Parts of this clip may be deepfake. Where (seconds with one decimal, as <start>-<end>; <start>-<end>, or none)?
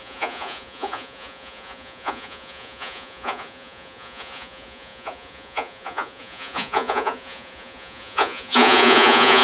0.0-9.4